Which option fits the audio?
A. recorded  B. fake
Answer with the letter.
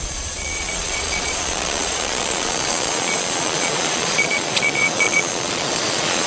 B